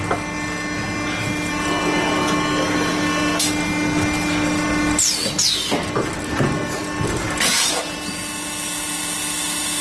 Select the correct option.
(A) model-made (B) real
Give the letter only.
B